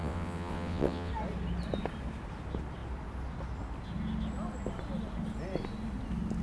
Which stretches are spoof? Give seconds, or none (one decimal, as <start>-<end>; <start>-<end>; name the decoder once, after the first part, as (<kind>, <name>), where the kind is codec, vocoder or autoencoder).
0.0-1.1 (vocoder, WaveNeXt)